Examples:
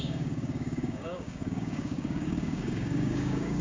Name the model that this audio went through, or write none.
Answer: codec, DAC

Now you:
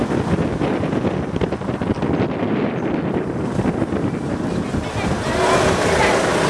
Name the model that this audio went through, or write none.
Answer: none